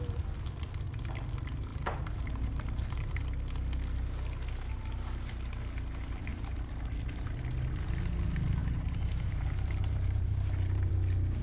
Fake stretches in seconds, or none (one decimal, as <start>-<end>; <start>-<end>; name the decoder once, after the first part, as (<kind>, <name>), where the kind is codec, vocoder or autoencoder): 1.7-3.2 (vocoder, BigVGAN v2); 6.3-7.4; 8.6-10.9